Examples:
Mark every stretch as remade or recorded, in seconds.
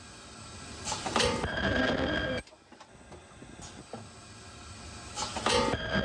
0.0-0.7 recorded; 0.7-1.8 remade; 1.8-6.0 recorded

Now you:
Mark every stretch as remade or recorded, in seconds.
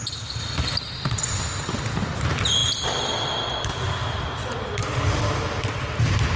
0.0-6.4 recorded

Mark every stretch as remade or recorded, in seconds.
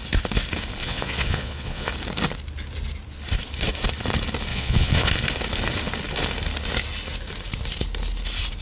0.0-0.8 recorded; 0.8-1.9 remade; 1.9-4.5 recorded; 4.5-5.1 remade; 5.1-8.6 recorded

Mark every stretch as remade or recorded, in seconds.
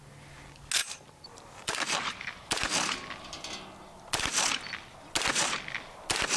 0.0-0.8 recorded; 0.8-2.5 remade; 2.5-6.4 recorded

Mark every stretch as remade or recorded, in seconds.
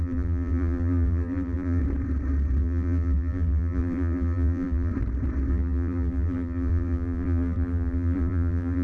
0.0-1.8 remade; 1.8-2.6 recorded; 2.6-4.9 remade; 4.9-5.5 recorded; 5.5-8.8 remade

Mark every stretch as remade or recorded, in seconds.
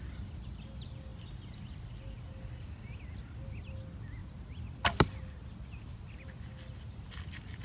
0.0-7.6 recorded